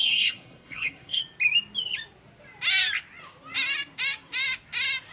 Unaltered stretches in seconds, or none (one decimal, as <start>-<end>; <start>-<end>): 1.2-5.1